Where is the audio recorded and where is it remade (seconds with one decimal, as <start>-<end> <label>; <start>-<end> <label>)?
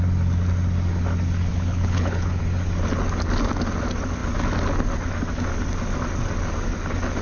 0.0-1.5 recorded; 1.5-2.4 remade; 2.4-7.2 recorded